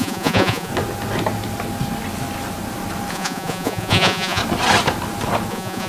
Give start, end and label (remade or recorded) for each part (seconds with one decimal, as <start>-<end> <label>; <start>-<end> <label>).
0.0-0.7 remade; 0.7-3.1 recorded; 3.1-4.4 remade; 4.4-5.5 recorded; 5.5-5.9 remade